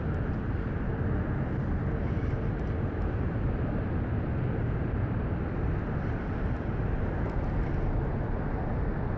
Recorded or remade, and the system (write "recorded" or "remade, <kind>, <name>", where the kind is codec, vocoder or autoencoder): recorded